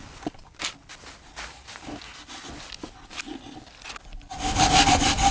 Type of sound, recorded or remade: recorded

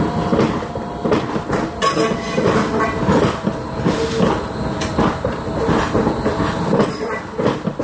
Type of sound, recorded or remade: recorded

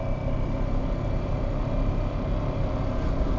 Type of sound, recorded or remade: recorded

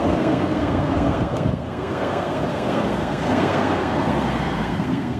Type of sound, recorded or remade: remade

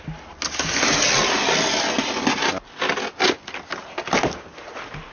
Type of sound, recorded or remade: recorded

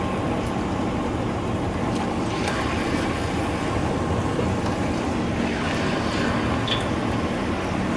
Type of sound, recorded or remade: recorded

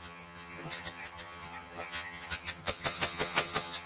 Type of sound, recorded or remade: remade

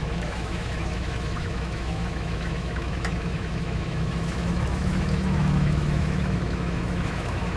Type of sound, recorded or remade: remade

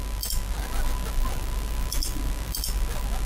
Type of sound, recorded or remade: recorded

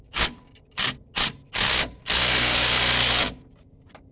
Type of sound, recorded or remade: recorded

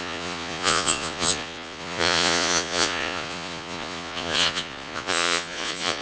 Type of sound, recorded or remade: remade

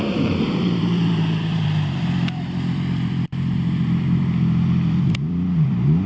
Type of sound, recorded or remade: remade